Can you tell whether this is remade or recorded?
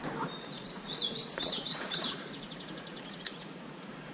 remade